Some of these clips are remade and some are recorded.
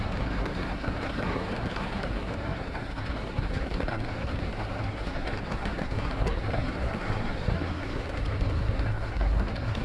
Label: remade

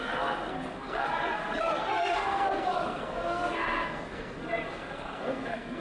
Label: remade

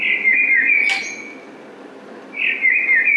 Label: recorded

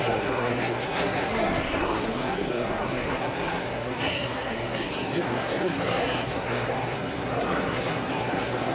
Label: remade